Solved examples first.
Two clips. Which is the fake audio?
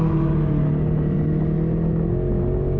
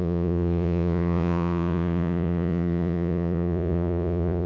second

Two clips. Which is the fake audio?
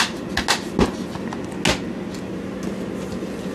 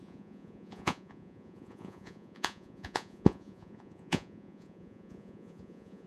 second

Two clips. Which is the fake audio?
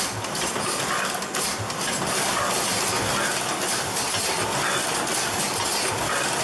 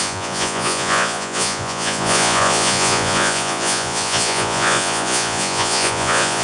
second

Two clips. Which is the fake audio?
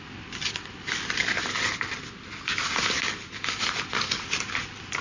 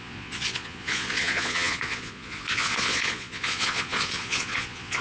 second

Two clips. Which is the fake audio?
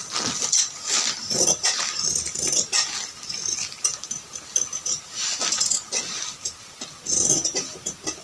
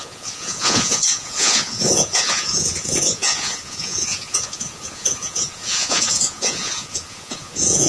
second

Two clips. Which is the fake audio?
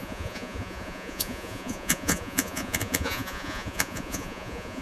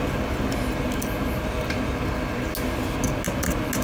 first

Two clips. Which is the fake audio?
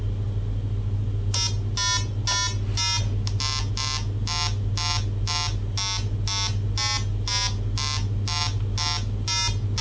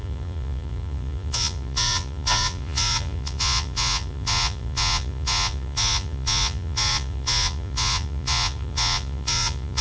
second